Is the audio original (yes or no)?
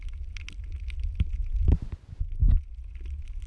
yes